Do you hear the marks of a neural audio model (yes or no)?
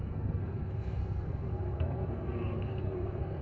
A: yes